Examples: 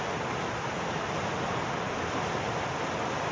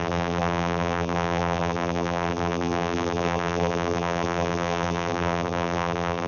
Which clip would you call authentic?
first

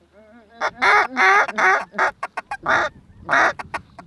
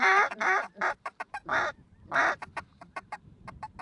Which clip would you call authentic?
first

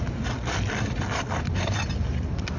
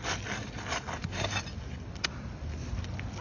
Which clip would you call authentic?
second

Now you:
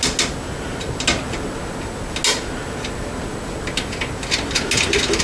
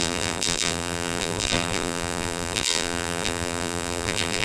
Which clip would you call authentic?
first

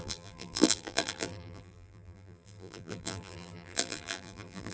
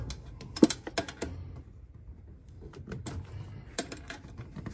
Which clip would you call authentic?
second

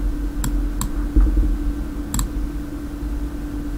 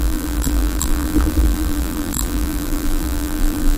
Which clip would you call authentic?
first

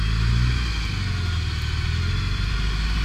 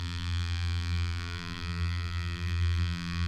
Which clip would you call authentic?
first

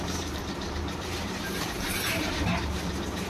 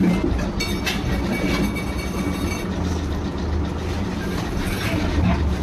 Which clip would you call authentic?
second